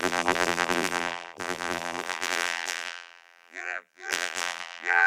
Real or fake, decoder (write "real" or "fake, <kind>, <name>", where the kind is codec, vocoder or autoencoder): fake, vocoder, BigVGAN v2